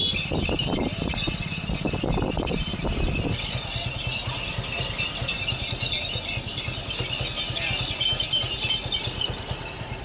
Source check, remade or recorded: recorded